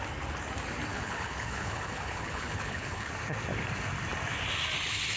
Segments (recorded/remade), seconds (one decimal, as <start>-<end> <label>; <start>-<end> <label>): 0.0-0.9 recorded; 0.9-3.1 remade; 3.1-5.2 recorded

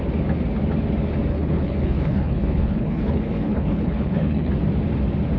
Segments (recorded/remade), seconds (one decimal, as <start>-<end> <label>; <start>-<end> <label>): 0.0-1.3 recorded; 1.3-4.5 remade; 4.5-5.4 recorded

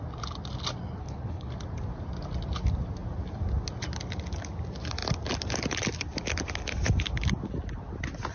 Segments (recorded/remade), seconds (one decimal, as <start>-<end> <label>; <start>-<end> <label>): 0.0-1.0 recorded; 1.0-1.5 remade; 1.5-8.3 recorded

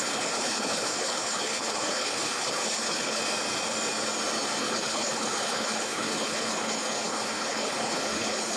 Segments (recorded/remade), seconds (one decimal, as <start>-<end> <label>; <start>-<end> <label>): 0.0-3.2 remade; 3.2-4.6 recorded; 4.6-8.6 remade

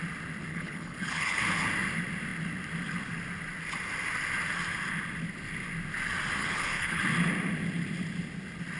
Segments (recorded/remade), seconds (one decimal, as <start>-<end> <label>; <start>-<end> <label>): 0.0-0.5 recorded; 0.5-1.4 remade; 1.4-6.4 recorded; 6.4-7.0 remade; 7.0-8.8 recorded

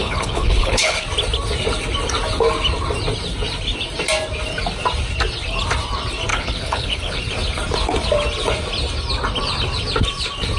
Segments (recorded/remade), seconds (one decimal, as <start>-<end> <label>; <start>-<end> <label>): 0.0-1.0 remade; 1.0-6.3 recorded; 6.3-7.2 remade; 7.2-10.6 recorded

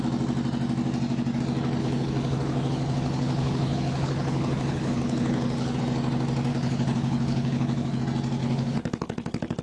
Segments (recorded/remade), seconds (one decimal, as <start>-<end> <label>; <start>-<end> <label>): 0.0-1.8 recorded; 1.8-5.8 remade; 5.8-6.5 recorded; 6.5-8.0 remade; 8.0-8.4 recorded; 8.4-9.6 remade